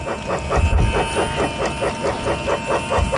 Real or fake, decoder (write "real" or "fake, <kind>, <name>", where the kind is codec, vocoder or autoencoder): real